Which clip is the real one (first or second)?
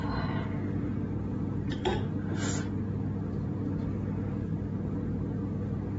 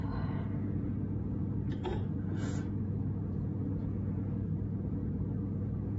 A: first